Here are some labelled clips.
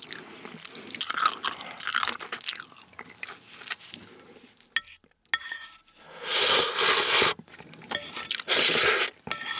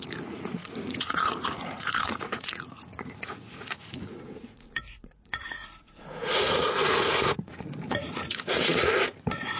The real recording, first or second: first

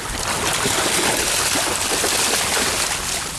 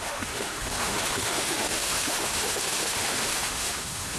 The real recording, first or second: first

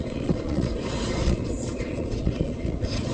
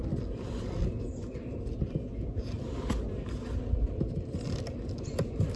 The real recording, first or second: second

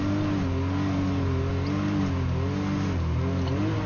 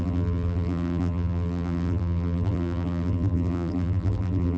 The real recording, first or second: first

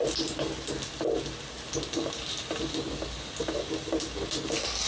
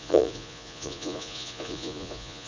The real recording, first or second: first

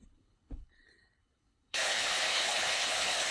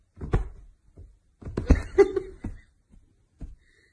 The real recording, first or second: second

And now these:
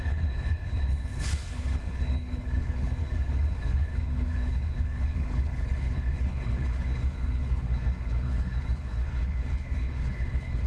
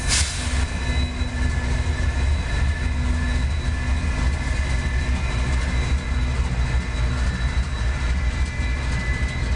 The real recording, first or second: second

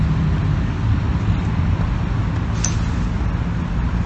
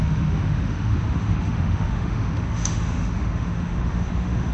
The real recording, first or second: first